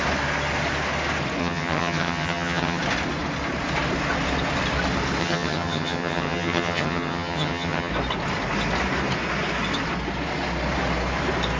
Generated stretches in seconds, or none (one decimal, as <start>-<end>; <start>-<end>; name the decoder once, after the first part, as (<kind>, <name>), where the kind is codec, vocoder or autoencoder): 1.4-2.8 (vocoder, HiFi-GAN); 5.2-7.9